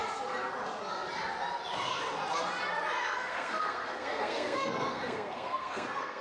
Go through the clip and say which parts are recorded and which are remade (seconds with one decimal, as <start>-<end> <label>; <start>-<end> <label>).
0.0-3.0 recorded; 3.0-6.2 remade